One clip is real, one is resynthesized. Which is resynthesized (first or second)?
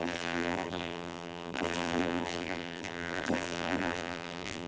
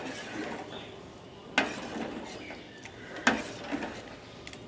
first